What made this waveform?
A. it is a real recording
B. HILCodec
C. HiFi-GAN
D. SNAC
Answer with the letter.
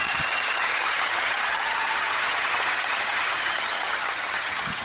C